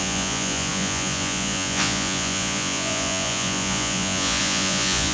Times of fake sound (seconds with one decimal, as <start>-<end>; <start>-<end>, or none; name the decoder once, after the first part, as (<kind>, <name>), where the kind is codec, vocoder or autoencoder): 0.0-5.1 (vocoder, Vocos)